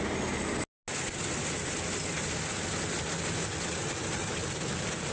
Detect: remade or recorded recorded